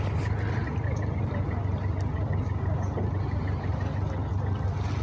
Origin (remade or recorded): recorded